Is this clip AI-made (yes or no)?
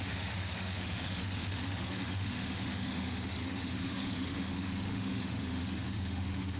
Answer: yes